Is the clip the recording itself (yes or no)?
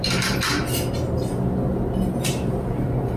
no